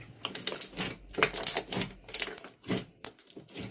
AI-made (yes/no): no